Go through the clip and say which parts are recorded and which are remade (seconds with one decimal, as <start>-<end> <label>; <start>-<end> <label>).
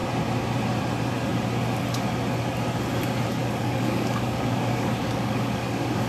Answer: 0.0-3.4 recorded; 3.4-6.1 remade